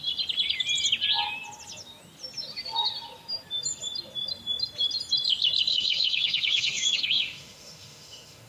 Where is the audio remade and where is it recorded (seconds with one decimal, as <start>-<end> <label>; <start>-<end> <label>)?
0.0-5.7 recorded; 5.7-8.5 remade

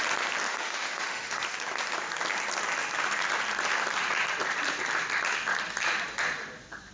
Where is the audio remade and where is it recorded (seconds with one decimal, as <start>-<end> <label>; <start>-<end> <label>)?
0.0-0.5 recorded; 0.5-1.4 remade; 1.4-6.9 recorded